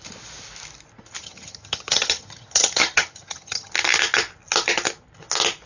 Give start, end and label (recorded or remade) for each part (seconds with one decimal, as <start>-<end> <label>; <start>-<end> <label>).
0.0-1.2 recorded; 1.2-3.7 remade; 3.7-5.7 recorded